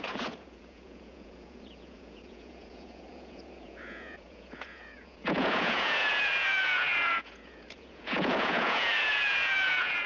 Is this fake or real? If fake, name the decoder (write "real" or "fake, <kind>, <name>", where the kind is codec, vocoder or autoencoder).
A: fake, vocoder, Vocos